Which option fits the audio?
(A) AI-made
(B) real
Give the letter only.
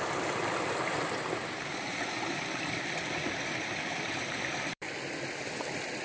A